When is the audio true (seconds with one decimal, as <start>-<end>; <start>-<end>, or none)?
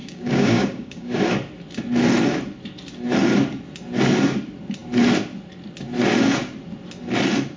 1.2-7.6